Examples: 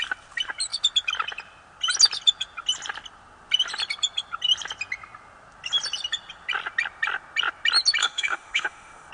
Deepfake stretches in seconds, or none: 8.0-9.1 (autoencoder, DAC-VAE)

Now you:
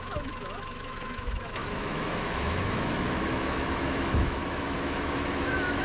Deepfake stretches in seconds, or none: 0.0-5.8 (autoencoder, DAC-VAE)

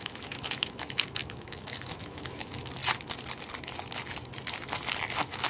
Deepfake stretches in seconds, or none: 0.0-2.8 (autoencoder, DAC-VAE); 5.1-5.5

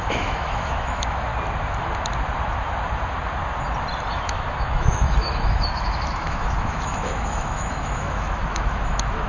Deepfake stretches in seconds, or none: 0.0-1.3 (autoencoder, DAC-VAE); 4.1-9.3

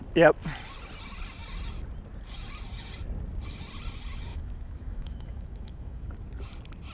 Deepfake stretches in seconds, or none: 4.3-6.1 (autoencoder, DAC-VAE)

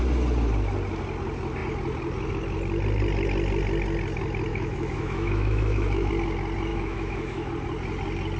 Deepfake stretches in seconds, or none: 4.5-6.1 (autoencoder, DAC-VAE); 6.7-7.5